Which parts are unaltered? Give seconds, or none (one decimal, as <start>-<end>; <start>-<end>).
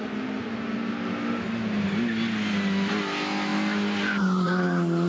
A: 0.0-5.1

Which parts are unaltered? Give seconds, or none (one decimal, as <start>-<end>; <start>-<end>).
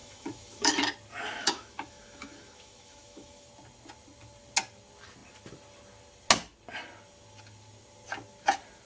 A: 0.8-1.4; 3.5-8.9